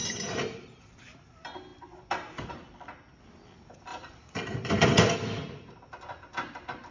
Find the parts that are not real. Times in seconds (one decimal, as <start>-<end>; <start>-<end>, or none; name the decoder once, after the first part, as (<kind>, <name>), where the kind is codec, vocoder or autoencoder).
0.0-0.8 (vocoder, BigVGAN v2); 3.9-4.7